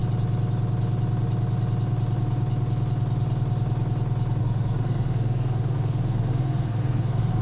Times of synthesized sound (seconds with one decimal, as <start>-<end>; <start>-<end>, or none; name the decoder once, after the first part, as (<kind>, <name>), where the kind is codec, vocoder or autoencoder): 4.4-7.4 (codec, SNAC)